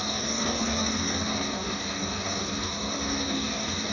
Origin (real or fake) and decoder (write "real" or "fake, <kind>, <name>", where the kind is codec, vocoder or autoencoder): fake, codec, DAC